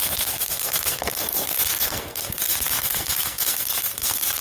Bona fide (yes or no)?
no